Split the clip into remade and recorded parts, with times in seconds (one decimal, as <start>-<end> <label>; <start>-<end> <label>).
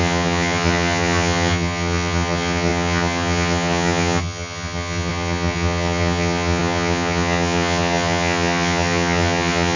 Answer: 0.0-9.8 remade